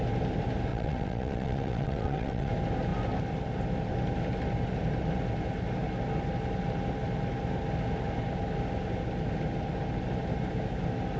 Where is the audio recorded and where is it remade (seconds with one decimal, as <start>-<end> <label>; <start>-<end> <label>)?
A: 0.0-0.7 recorded; 0.7-2.5 remade; 2.5-11.2 recorded